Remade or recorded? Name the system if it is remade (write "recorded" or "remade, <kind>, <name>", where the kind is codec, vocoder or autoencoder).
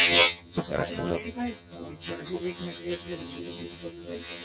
remade, vocoder, HiFi-GAN